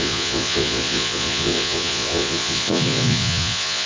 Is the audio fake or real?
fake